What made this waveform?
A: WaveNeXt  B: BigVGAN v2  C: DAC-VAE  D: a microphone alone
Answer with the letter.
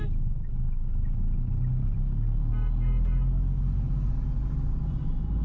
D